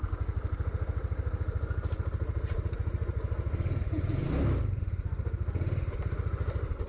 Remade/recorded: recorded